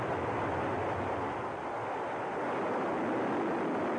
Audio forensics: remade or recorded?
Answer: recorded